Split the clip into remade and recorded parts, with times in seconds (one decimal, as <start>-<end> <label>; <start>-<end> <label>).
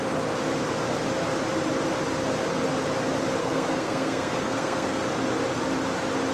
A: 0.0-3.4 recorded; 3.4-5.0 remade; 5.0-6.3 recorded